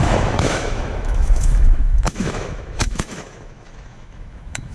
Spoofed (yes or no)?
yes